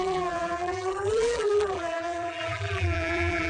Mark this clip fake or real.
fake